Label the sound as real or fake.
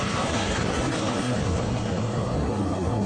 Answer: fake